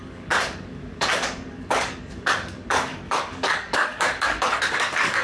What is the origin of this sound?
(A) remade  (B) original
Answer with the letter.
A